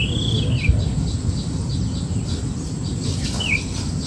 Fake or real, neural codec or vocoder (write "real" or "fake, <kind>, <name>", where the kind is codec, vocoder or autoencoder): real